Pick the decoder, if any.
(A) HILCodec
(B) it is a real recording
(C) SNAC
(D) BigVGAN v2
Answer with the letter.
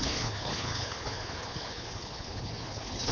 A